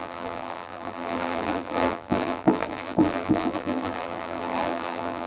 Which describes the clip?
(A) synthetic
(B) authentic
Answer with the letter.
A